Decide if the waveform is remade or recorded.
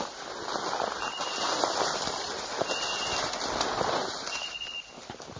remade